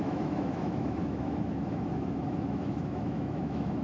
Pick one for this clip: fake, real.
fake